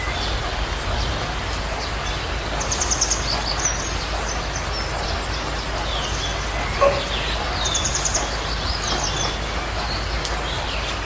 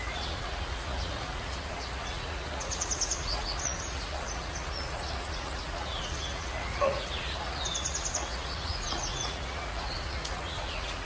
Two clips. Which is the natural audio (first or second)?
first